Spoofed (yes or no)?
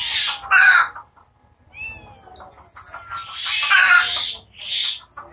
no